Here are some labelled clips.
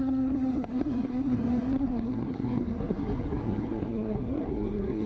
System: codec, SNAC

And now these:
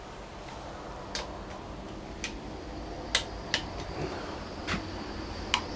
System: none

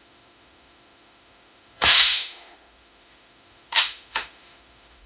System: autoencoder, DAC-VAE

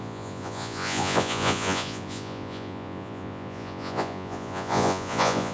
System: vocoder, Vocos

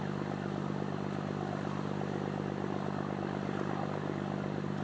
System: none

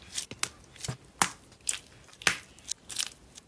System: none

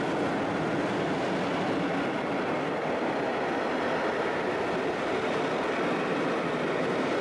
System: none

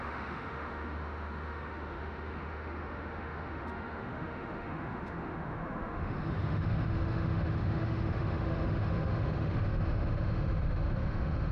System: autoencoder, DAC-VAE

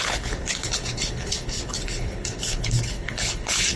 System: codec, HILCodec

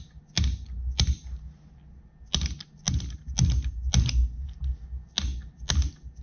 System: none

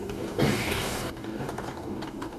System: codec, DAC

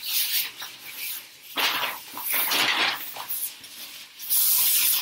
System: none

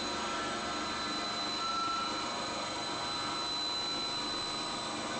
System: none